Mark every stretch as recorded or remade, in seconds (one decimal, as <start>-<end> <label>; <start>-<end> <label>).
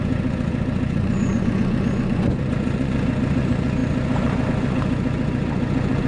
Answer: 0.0-6.1 remade